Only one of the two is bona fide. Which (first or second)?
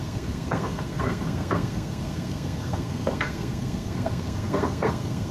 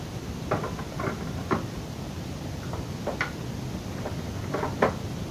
second